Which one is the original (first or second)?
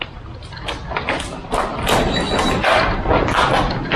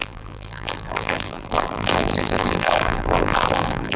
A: first